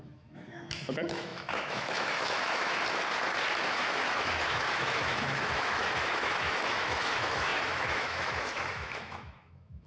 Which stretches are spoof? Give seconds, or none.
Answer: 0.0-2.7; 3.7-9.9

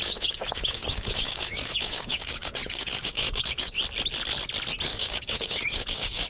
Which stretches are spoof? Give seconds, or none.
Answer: 0.0-3.8; 4.9-6.3

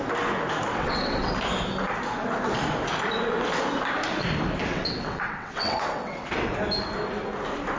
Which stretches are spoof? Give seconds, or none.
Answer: 0.7-1.3; 4.7-6.4